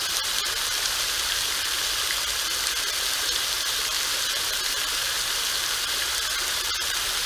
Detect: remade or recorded recorded